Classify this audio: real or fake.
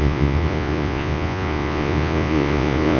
fake